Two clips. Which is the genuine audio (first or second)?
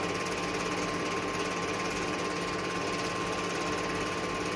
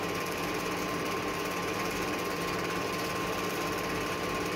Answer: first